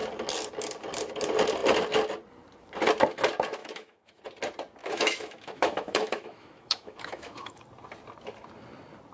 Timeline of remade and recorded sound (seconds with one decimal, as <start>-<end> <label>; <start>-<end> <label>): 0.0-3.6 recorded; 3.6-4.2 remade; 4.2-4.8 recorded; 4.8-7.6 remade; 7.6-9.1 recorded